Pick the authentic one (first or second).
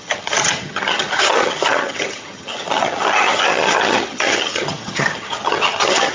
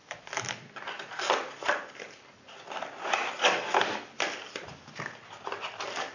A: second